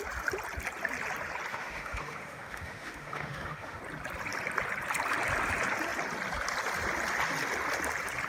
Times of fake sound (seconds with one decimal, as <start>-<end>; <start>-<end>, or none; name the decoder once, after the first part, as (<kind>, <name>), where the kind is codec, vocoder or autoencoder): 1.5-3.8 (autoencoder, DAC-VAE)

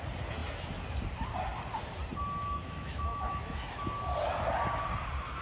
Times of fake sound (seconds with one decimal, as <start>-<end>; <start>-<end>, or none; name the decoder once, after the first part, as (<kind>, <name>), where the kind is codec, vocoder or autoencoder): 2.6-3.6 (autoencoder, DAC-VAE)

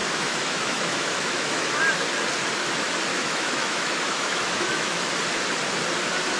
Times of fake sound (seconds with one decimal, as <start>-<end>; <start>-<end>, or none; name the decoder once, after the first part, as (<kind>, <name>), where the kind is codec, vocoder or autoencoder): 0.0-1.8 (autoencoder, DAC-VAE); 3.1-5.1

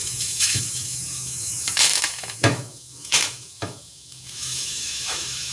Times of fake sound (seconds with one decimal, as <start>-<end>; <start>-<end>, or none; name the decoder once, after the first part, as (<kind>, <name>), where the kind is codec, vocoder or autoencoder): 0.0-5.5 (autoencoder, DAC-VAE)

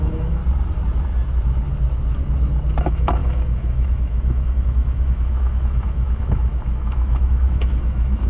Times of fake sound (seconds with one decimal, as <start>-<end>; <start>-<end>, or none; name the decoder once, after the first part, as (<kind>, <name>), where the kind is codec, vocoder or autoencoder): 0.0-0.4 (autoencoder, DAC-VAE); 2.8-8.3

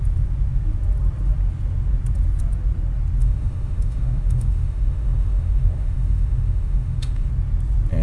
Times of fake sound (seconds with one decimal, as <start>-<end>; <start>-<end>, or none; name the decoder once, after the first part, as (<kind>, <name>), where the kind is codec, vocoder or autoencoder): 3.2-7.3 (autoencoder, DAC-VAE)

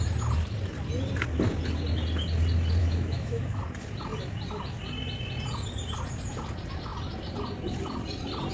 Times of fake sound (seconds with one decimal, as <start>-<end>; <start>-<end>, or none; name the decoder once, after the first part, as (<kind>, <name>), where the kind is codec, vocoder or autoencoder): 2.8-3.6 (autoencoder, DAC-VAE)